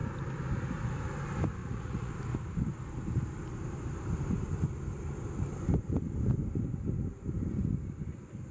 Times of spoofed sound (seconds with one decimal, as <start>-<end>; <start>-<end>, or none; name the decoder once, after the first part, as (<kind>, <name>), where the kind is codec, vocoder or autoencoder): 1.6-2.1 (vocoder, Vocos)